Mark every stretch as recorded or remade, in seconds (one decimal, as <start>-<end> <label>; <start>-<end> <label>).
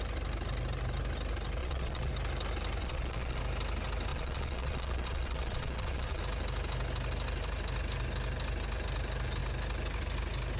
0.0-1.6 recorded; 1.6-2.1 remade; 2.1-2.8 recorded; 2.8-3.4 remade; 3.4-4.1 recorded; 4.1-6.2 remade; 6.2-10.6 recorded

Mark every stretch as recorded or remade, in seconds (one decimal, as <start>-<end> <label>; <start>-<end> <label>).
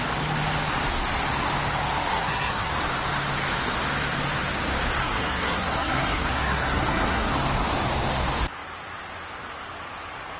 0.0-2.1 recorded; 2.1-2.7 remade; 2.7-5.0 recorded; 5.0-7.3 remade; 7.3-10.4 recorded